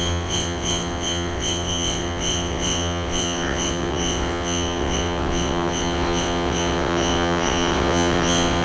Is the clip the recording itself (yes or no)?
no